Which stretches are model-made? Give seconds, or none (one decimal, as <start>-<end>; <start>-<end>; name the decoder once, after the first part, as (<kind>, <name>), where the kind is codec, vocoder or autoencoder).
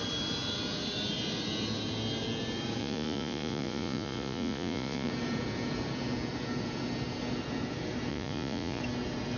2.8-5.1 (vocoder, Vocos); 8.1-8.8